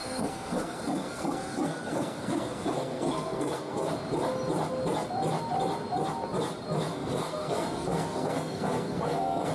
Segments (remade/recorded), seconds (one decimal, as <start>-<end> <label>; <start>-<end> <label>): 0.0-3.9 remade; 3.9-6.9 recorded; 6.9-9.5 remade